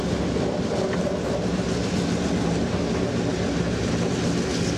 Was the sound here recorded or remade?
recorded